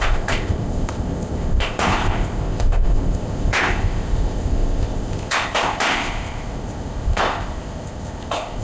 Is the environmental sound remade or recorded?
remade